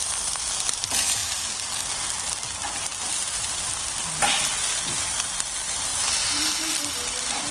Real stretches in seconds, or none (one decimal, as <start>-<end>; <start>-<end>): 0.0-7.5